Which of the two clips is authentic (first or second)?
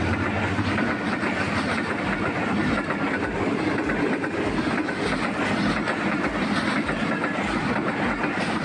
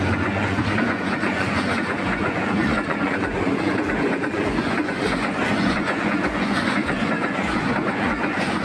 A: first